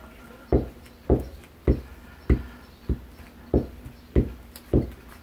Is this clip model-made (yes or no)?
no